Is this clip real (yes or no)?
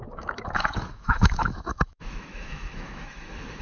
no